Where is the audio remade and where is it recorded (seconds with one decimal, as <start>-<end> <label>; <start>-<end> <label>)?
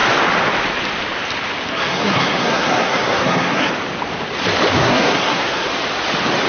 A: 0.0-1.7 recorded; 1.7-3.7 remade; 3.7-4.8 recorded; 4.8-5.7 remade; 5.7-6.5 recorded